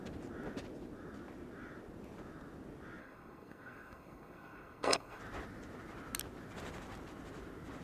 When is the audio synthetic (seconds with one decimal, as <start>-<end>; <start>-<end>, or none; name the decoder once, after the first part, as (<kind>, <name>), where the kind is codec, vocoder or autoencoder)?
3.0-5.2 (codec, SNAC)